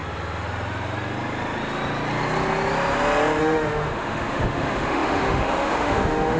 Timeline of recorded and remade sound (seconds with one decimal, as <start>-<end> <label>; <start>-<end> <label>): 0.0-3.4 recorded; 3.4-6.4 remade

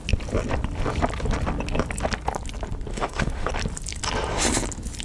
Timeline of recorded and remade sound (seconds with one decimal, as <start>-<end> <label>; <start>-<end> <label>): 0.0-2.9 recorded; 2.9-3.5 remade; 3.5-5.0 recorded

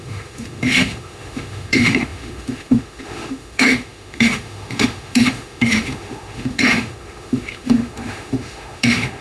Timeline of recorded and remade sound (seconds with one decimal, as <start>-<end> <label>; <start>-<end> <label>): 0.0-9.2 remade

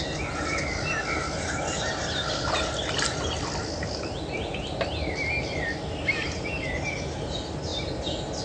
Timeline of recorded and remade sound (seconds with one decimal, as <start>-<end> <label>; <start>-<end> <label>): 0.0-8.4 recorded

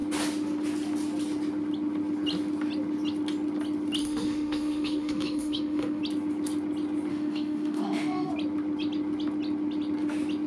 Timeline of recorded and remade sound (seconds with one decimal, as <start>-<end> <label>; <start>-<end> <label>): 0.0-4.0 recorded; 4.0-6.0 remade; 6.0-7.1 recorded; 7.1-8.3 remade; 8.3-10.5 recorded

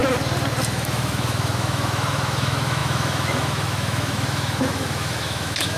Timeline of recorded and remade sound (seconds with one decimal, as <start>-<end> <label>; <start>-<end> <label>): 0.0-0.7 recorded; 0.7-5.8 remade